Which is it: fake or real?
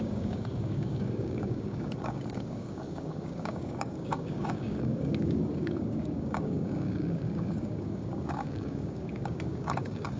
fake